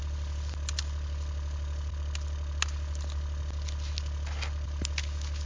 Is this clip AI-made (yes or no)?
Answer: no